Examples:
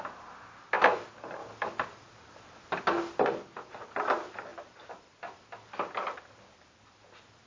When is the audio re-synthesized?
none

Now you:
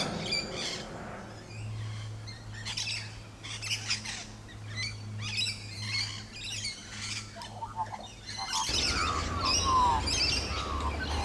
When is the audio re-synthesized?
none

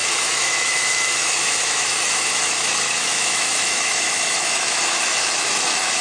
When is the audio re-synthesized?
0.0-6.0 (autoencoder, DAC-VAE)

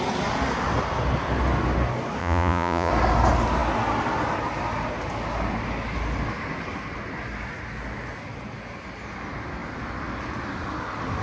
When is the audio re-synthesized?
2.2-2.9 (vocoder, Vocos)